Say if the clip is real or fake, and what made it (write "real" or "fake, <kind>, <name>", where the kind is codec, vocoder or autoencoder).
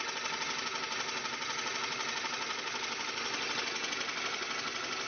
real